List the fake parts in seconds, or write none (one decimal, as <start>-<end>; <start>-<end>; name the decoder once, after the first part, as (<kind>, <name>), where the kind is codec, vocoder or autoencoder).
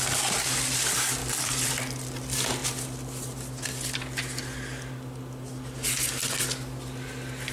1.2-1.7 (vocoder, BigVGAN v2)